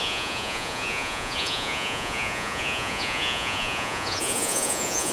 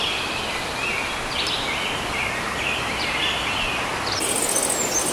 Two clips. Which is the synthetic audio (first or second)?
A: first